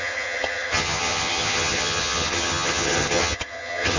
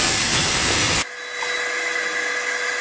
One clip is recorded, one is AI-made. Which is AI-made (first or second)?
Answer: first